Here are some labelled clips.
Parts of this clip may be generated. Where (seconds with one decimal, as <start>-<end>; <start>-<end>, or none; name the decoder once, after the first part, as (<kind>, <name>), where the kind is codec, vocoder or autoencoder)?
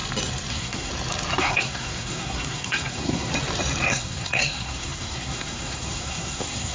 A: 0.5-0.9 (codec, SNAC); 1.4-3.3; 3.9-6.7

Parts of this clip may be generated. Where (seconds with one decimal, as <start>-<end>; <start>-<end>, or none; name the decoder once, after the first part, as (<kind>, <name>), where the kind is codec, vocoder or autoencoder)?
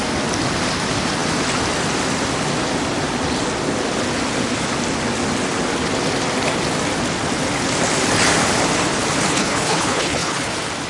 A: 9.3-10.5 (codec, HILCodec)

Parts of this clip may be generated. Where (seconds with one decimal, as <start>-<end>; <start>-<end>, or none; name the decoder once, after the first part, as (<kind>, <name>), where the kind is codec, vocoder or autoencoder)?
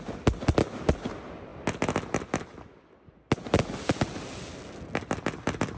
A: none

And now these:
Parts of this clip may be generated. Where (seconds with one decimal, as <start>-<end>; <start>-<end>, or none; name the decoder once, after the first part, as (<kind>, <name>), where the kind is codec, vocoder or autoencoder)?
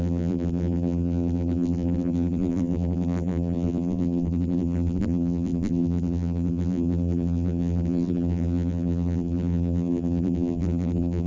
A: 0.0-11.3 (vocoder, BigVGAN v2)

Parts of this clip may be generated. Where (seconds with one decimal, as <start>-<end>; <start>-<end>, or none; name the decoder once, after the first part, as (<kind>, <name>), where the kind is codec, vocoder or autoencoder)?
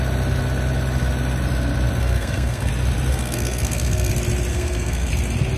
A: 2.0-2.7 (codec, SNAC); 3.1-4.1; 4.5-5.1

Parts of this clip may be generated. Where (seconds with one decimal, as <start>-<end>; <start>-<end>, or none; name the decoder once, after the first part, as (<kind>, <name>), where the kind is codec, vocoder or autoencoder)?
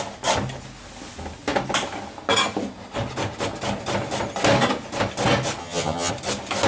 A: 5.6-6.1 (vocoder, HiFi-GAN)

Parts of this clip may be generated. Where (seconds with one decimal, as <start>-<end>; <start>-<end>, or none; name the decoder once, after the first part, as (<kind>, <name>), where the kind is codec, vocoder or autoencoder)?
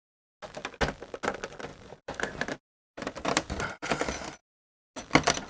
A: 1.7-3.9 (vocoder, BigVGAN v2)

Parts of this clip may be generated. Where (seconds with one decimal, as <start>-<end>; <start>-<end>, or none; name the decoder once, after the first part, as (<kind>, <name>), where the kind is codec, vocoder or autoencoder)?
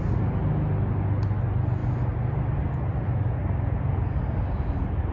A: none